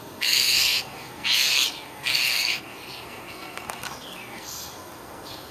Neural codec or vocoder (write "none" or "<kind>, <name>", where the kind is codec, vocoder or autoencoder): codec, SNAC